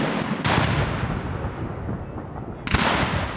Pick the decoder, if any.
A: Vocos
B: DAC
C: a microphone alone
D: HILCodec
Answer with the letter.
C